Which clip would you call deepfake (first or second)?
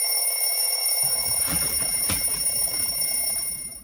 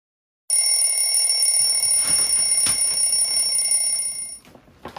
first